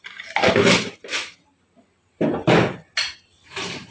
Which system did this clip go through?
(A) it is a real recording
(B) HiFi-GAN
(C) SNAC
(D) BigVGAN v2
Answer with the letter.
A